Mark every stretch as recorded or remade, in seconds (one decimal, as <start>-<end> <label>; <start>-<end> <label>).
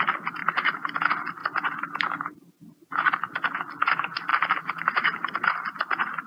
0.0-0.4 recorded; 0.4-1.0 remade; 1.0-1.4 recorded; 1.4-2.5 remade; 2.5-4.3 recorded; 4.3-5.5 remade; 5.5-6.3 recorded